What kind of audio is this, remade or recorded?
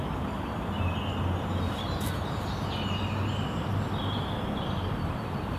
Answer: recorded